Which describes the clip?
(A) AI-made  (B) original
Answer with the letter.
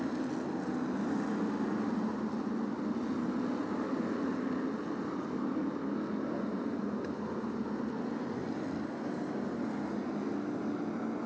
B